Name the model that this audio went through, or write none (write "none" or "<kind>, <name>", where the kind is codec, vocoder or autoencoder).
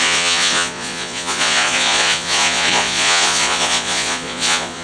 vocoder, Vocos